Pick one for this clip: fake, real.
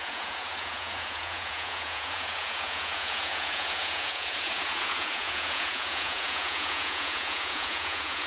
fake